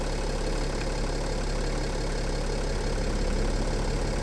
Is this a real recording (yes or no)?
yes